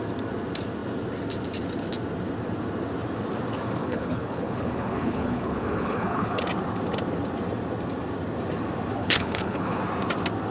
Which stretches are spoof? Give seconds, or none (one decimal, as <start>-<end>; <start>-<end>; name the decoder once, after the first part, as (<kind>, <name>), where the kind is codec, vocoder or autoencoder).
3.8-6.4 (codec, HILCodec); 9.0-9.8